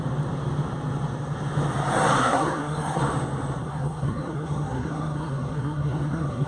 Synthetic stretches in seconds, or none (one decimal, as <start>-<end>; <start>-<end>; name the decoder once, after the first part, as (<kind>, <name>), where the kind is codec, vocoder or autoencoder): 2.2-3.0 (codec, SNAC); 3.6-6.5